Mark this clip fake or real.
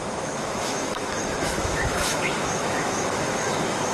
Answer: fake